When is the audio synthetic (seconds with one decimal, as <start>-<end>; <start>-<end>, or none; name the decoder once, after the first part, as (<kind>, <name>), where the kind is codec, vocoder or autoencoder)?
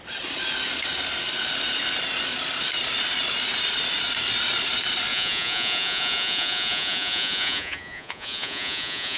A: 5.1-9.2 (vocoder, Vocos)